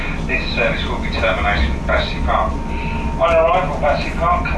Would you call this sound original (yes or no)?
yes